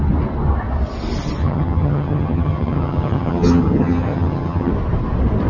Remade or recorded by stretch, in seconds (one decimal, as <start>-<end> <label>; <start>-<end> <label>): 0.0-1.4 recorded; 1.4-4.7 remade; 4.7-5.5 recorded